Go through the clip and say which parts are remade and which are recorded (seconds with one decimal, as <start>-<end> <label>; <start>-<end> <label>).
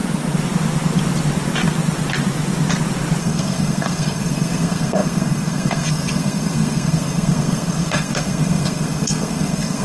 0.0-3.2 recorded; 3.2-9.8 remade